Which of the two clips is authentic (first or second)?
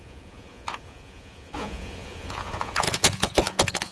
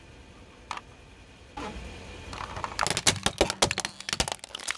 second